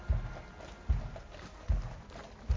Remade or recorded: recorded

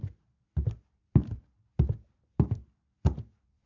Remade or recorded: recorded